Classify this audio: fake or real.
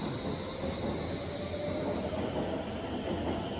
real